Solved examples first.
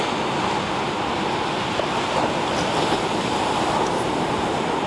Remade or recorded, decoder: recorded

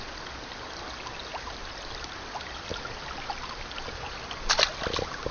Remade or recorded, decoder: recorded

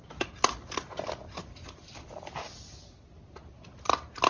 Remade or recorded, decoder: recorded